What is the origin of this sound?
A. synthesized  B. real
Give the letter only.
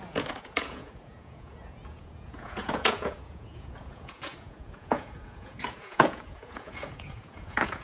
A